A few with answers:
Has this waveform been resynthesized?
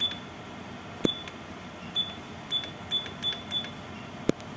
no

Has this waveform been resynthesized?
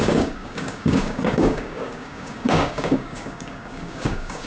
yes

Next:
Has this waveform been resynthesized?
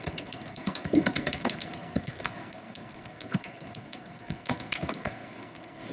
yes